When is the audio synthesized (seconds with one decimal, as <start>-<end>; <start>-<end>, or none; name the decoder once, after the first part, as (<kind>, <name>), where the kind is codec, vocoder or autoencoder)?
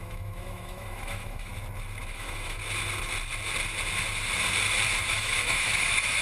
0.0-1.5 (autoencoder, DAC-VAE); 2.0-2.6; 5.0-6.2